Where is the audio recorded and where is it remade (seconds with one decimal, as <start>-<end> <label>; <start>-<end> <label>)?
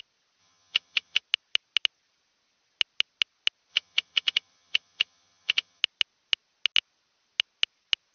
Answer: 0.0-0.4 recorded; 0.4-1.2 remade; 1.2-3.7 recorded; 3.7-5.8 remade; 5.8-8.1 recorded